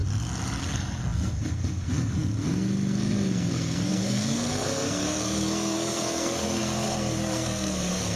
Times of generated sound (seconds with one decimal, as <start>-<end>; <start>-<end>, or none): 0.6-8.2